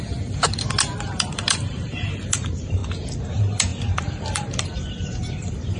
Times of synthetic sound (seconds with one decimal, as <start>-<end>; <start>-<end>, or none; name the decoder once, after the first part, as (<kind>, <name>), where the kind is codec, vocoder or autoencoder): 0.0-2.8 (vocoder, BigVGAN v2); 3.3-5.8